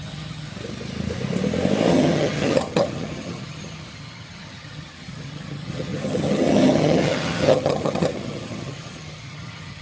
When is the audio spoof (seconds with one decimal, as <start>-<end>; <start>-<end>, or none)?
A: 0.0-0.5; 1.9-9.8